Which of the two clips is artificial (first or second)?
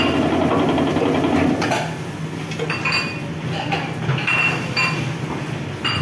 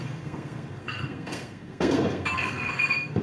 second